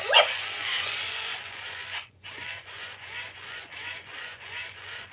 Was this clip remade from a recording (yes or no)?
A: yes